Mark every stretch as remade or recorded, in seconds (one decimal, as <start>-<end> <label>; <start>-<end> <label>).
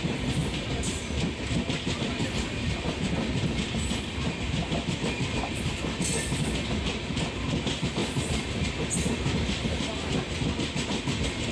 0.0-0.4 recorded; 0.4-1.0 remade; 1.0-2.2 recorded; 2.2-6.0 remade; 6.0-8.0 recorded; 8.0-9.1 remade; 9.1-11.5 recorded